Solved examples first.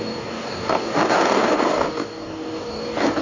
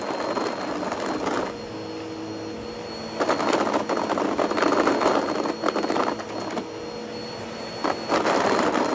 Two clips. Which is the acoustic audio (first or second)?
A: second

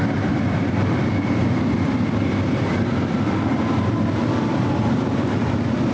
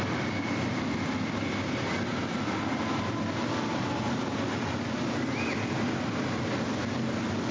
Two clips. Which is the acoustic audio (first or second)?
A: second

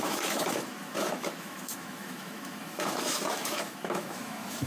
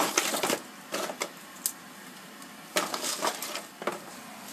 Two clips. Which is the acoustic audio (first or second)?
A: second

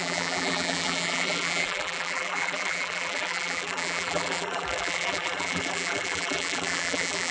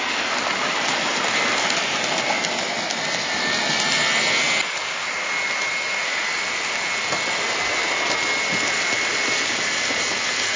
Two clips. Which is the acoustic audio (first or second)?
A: second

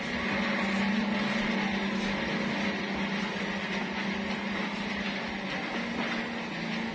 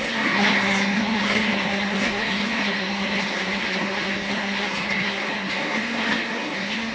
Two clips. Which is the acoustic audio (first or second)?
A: first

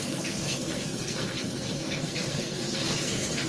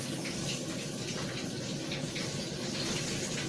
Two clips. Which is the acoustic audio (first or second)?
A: second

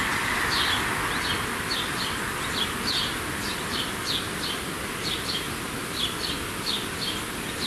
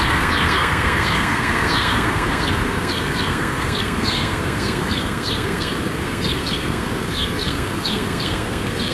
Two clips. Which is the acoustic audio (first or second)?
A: first